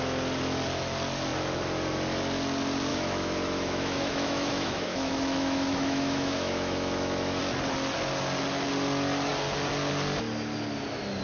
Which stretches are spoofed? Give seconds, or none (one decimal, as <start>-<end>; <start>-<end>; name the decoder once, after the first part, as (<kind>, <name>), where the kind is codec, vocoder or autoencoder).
2.9-7.4 (autoencoder, DAC-VAE)